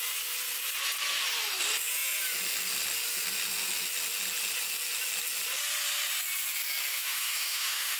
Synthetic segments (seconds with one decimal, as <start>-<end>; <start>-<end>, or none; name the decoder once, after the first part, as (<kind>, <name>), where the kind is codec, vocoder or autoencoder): 6.9-8.0 (autoencoder, DAC-VAE)